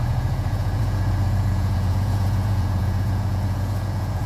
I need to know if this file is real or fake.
fake